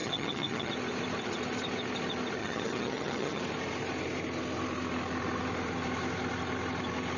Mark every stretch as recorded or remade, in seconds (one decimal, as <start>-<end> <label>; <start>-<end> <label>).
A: 0.0-0.7 remade; 0.7-2.4 recorded; 2.4-3.4 remade; 3.4-7.2 recorded